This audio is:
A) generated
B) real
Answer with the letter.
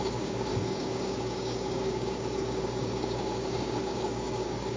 A